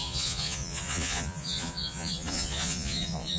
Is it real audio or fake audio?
fake